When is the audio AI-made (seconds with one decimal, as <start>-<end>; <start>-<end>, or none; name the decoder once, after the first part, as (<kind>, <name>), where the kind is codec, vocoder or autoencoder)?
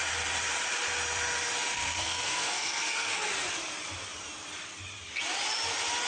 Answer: 1.7-3.3 (codec, SNAC)